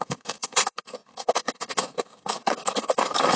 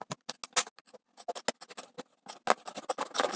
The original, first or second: second